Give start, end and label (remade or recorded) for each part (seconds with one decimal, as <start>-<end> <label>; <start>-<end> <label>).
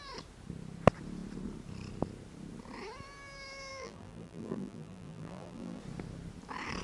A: 0.0-3.7 recorded; 3.7-5.8 remade; 5.8-6.8 recorded